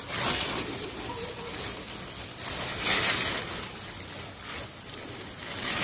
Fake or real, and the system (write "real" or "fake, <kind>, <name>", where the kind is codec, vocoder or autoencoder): real